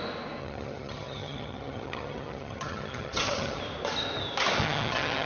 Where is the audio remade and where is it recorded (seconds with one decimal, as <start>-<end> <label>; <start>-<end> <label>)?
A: 0.0-0.4 recorded; 0.4-3.6 remade; 3.6-4.6 recorded; 4.6-5.3 remade